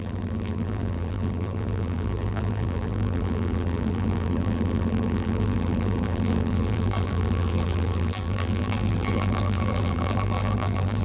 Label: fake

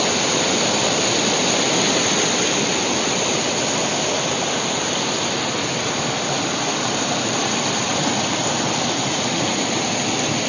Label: real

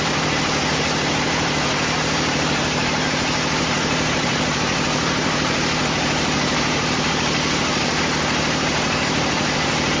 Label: fake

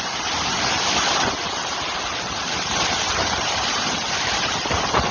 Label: fake